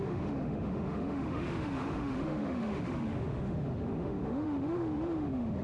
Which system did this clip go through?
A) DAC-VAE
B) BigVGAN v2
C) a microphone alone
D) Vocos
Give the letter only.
A